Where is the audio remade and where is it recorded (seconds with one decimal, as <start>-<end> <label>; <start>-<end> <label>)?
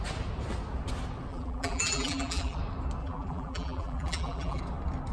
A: 0.0-1.3 recorded; 1.3-2.6 remade; 2.6-3.0 recorded; 3.0-4.6 remade; 4.6-5.1 recorded